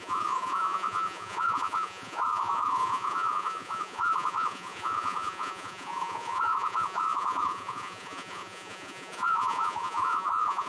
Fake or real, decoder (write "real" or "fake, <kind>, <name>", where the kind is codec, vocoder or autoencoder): fake, vocoder, Vocos